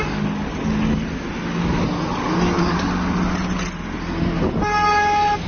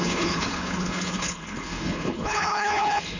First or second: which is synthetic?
second